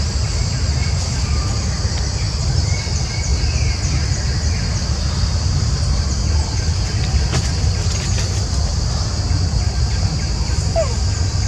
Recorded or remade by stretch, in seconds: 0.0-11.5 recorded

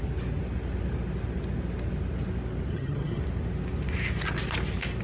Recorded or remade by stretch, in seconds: 0.0-2.7 recorded; 2.7-3.2 remade; 3.2-5.0 recorded

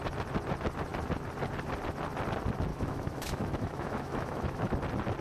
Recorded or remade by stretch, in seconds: 0.0-2.7 recorded; 2.7-4.7 remade; 4.7-5.2 recorded